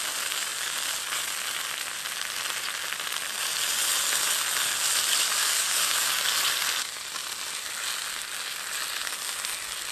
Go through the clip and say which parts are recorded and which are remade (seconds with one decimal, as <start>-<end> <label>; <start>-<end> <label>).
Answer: 0.0-5.4 recorded; 5.4-6.1 remade; 6.1-9.9 recorded